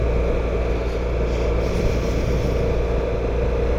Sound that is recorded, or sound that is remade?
recorded